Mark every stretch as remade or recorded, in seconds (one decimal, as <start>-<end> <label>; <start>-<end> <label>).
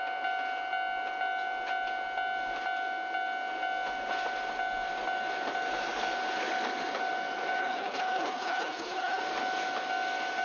0.0-7.6 recorded; 7.6-9.2 remade; 9.2-10.4 recorded